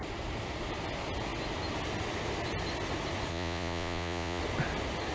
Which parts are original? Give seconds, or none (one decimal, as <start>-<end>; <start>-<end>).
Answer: 0.0-3.3; 4.4-5.1